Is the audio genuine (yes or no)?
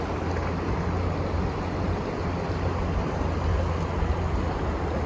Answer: yes